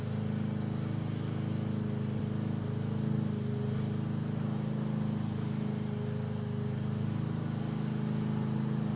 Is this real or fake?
real